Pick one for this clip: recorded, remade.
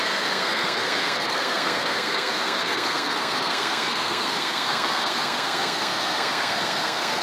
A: remade